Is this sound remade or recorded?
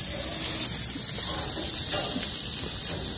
recorded